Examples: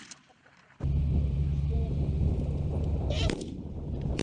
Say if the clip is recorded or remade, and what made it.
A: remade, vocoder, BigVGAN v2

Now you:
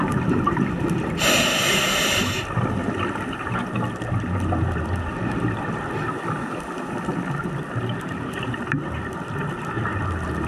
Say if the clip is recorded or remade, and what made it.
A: recorded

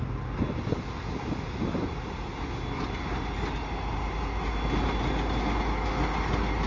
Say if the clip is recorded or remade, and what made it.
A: recorded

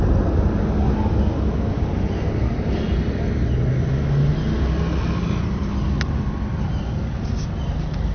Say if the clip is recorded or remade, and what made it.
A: recorded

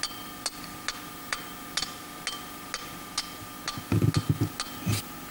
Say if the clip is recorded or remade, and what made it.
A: recorded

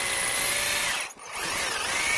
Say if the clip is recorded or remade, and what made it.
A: recorded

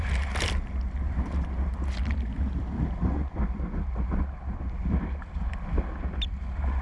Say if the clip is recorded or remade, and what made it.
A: recorded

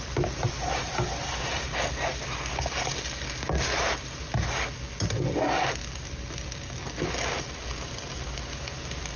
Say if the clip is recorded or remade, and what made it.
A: recorded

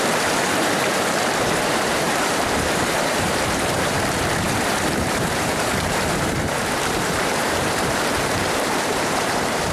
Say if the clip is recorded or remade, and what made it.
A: remade, vocoder, BigVGAN v2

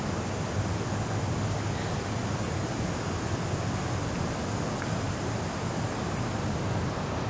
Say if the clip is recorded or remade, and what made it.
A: recorded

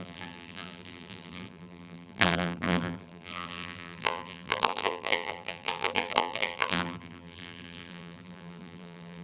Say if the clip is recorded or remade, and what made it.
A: remade, vocoder, BigVGAN v2